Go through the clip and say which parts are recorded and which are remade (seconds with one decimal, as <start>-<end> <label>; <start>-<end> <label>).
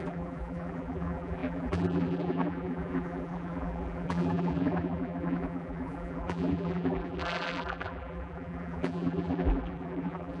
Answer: 0.0-10.4 remade